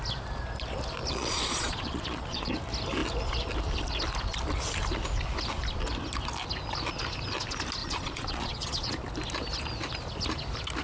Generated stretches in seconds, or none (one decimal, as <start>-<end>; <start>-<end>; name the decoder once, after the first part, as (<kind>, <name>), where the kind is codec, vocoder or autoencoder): 1.0-2.5 (vocoder, Vocos); 7.8-8.9